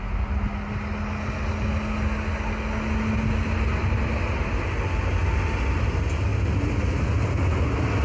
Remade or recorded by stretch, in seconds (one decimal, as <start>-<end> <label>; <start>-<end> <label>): 0.0-8.0 recorded

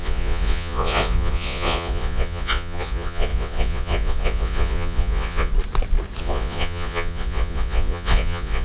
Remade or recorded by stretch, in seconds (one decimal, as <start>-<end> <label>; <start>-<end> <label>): 0.0-5.5 remade; 5.5-6.2 recorded; 6.2-8.6 remade